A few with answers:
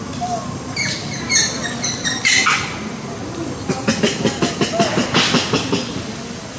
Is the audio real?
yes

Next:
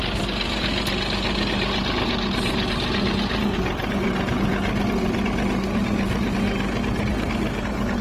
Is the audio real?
yes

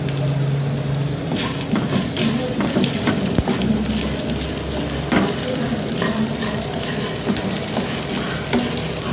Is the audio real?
yes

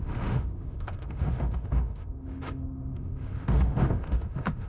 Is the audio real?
no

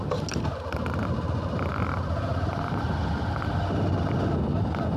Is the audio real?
yes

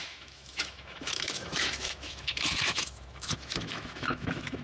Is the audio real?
no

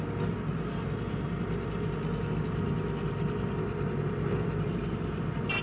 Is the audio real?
yes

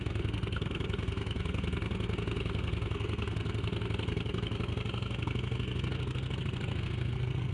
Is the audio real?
no